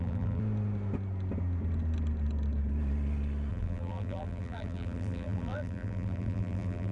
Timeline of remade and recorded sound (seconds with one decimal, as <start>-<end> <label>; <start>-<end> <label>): 0.0-0.4 remade; 0.4-3.5 recorded; 3.5-6.9 remade